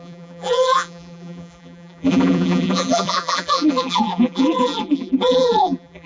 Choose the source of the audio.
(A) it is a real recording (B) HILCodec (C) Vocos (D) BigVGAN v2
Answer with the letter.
D